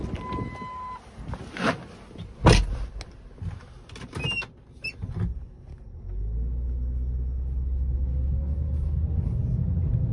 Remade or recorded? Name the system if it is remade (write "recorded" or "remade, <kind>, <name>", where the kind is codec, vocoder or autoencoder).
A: recorded